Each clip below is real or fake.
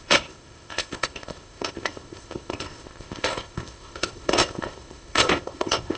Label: fake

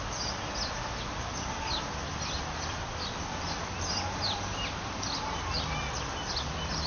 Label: real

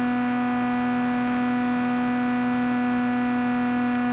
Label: real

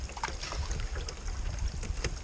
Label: real